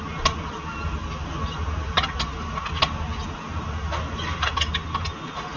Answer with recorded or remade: recorded